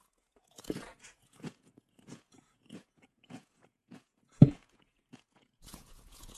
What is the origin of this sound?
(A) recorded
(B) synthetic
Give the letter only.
B